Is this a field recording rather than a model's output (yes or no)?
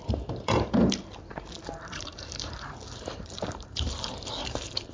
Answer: no